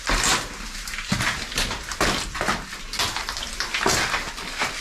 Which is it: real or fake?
real